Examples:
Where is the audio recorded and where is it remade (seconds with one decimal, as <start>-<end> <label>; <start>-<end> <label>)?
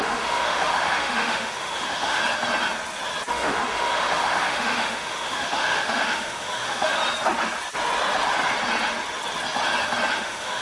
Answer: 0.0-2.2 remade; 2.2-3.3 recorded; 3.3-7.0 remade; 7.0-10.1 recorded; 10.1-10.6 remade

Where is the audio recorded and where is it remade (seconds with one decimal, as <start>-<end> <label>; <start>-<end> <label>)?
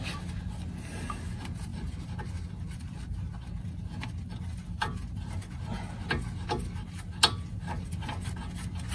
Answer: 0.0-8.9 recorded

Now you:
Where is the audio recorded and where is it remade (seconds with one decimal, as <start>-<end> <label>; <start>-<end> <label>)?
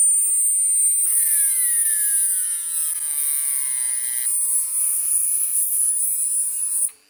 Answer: 0.0-4.8 recorded; 4.8-5.9 remade; 5.9-7.1 recorded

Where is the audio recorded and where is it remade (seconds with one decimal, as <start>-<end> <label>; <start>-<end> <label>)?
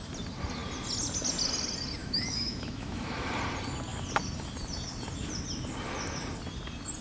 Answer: 0.0-2.0 recorded; 2.0-3.3 remade; 3.3-7.0 recorded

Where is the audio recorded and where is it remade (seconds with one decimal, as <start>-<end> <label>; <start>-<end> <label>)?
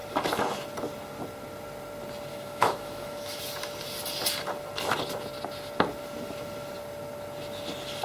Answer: 0.0-2.3 recorded; 2.3-3.4 remade; 3.4-8.0 recorded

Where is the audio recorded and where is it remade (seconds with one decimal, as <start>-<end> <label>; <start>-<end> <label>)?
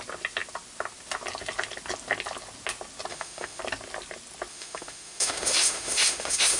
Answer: 0.0-3.1 recorded; 3.1-3.6 remade; 3.6-4.5 recorded; 4.5-6.6 remade